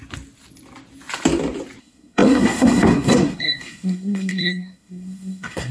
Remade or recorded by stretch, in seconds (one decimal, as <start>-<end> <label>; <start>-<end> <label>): 0.0-1.8 recorded; 1.8-5.7 remade